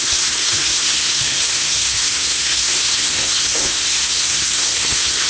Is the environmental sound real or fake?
fake